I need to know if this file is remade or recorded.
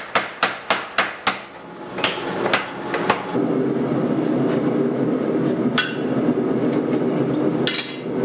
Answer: recorded